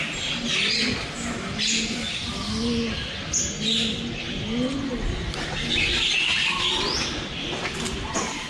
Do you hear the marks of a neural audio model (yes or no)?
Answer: no